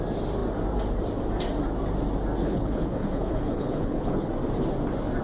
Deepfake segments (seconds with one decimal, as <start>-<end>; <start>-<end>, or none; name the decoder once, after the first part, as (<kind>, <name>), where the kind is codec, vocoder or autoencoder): 2.4-4.3 (codec, HILCodec)